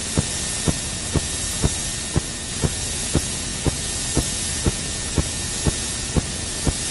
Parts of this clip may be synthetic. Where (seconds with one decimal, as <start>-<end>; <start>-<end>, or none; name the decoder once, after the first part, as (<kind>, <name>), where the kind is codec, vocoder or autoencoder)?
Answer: 0.8-1.9 (vocoder, Vocos); 2.5-6.9